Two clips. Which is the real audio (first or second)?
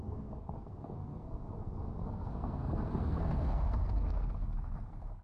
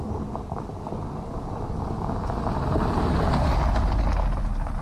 second